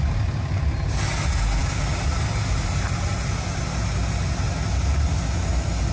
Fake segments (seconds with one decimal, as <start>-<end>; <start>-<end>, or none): none